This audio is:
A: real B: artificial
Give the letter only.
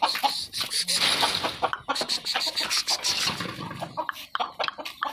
A